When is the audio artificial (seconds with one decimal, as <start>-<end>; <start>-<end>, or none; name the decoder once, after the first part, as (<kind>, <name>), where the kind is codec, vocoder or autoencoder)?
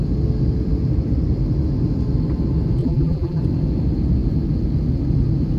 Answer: 2.8-3.4 (vocoder, BigVGAN v2)